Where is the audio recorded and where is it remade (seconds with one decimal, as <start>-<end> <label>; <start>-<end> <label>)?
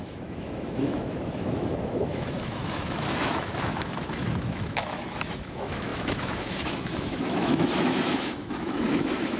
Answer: 0.0-9.4 remade